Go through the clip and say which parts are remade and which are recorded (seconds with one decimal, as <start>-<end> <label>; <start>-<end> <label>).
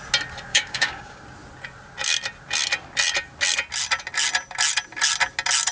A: 0.0-0.5 recorded; 0.5-1.2 remade; 1.2-5.7 recorded